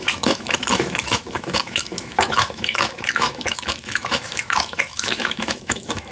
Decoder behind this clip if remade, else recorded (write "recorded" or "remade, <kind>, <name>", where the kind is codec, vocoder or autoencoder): remade, autoencoder, DAC-VAE